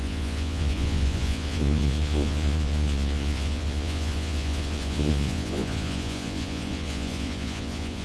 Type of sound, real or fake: fake